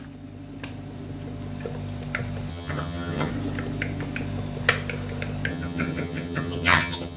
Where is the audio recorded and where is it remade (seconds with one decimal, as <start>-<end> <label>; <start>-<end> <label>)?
0.0-2.5 recorded; 2.5-3.3 remade; 3.3-5.5 recorded; 5.5-7.2 remade